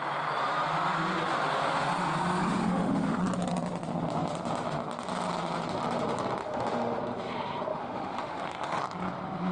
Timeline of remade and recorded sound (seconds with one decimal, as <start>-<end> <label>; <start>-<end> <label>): 0.0-2.6 recorded; 2.6-3.2 remade; 3.2-6.4 recorded; 6.4-7.0 remade; 7.0-7.7 recorded; 7.7-8.8 remade; 8.8-9.5 recorded